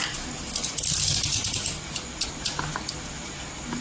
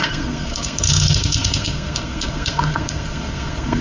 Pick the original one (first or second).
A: first